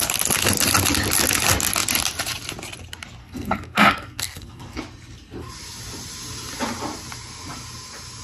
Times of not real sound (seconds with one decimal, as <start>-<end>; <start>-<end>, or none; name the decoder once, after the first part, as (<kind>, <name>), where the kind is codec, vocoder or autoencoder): 3.2-4.8 (codec, SNAC)